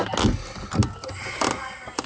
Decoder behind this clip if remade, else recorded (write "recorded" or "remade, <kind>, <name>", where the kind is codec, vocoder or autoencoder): recorded